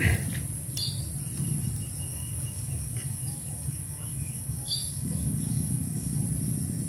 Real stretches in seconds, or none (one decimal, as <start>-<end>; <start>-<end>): 0.0-2.1; 6.2-6.9